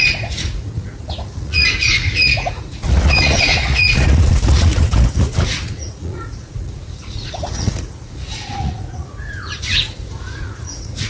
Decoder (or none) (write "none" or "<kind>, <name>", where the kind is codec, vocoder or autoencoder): vocoder, Vocos